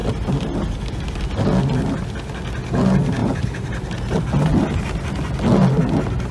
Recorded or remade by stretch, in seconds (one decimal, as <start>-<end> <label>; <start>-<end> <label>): 0.0-3.2 recorded; 3.2-4.2 remade; 4.2-6.3 recorded